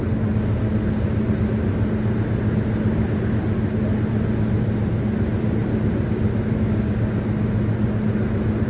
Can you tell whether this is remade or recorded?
recorded